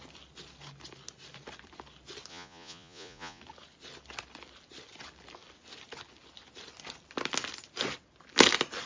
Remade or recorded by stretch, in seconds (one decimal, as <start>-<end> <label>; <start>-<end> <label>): 0.0-2.3 recorded; 2.3-3.4 remade; 3.4-8.9 recorded